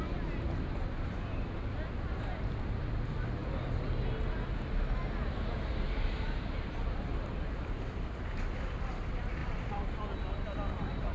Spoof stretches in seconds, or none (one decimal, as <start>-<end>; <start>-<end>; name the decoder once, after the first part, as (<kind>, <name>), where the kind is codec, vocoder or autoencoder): 9.4-10.0 (vocoder, BigVGAN v2)